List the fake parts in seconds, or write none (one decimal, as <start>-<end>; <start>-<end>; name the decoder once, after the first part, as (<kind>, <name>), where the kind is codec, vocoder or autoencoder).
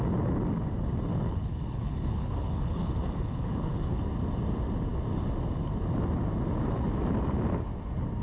1.1-4.0 (codec, HILCodec)